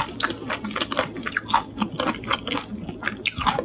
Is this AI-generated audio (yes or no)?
no